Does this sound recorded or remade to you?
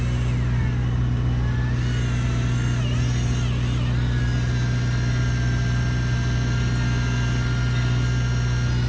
recorded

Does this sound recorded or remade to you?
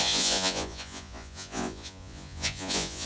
remade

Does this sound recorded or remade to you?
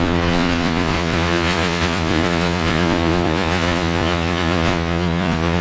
remade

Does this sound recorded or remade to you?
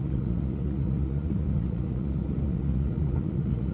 remade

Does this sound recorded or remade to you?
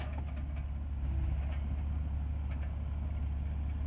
recorded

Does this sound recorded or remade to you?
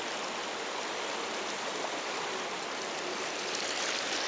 recorded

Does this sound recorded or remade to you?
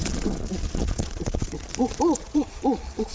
remade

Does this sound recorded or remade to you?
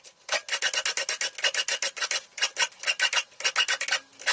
recorded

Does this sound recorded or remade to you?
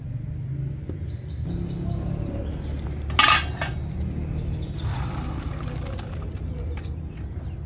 recorded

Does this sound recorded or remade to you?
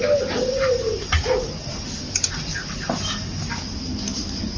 recorded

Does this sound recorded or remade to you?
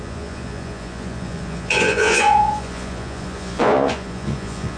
remade